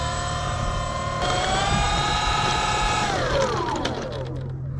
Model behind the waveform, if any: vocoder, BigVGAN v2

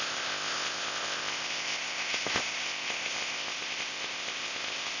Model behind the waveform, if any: codec, ZipCodec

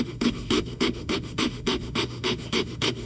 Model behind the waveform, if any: autoencoder, DAC-VAE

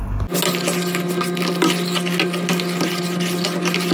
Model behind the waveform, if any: none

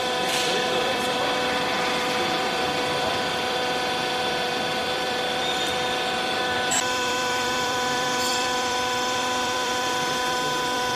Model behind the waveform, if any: vocoder, BigVGAN v2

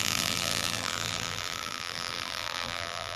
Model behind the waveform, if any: vocoder, BigVGAN v2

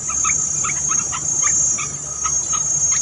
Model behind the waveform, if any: none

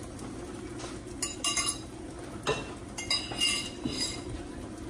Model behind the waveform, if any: none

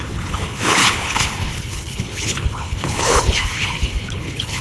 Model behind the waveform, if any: codec, HILCodec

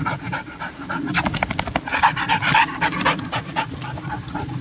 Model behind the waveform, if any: none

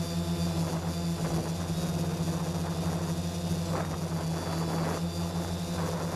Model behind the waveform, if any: none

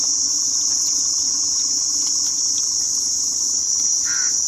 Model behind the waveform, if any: vocoder, BigVGAN v2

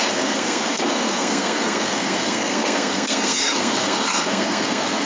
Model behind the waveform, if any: codec, SNAC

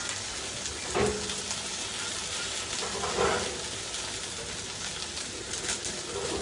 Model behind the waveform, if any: none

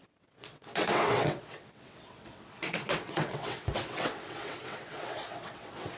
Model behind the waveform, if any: vocoder, WaveNeXt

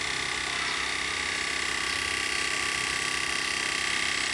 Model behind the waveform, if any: none